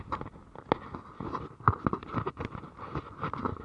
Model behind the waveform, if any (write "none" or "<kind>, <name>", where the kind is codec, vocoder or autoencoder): none